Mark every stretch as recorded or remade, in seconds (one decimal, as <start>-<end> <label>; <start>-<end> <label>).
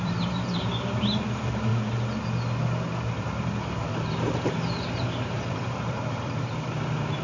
0.0-1.7 remade; 1.7-3.2 recorded; 3.2-7.2 remade